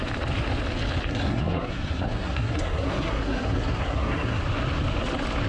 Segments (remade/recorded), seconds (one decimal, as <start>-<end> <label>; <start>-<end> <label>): 0.0-1.1 recorded; 1.1-4.4 remade; 4.4-5.5 recorded